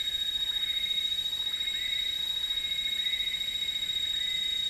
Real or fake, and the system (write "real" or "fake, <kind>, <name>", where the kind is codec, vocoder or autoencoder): real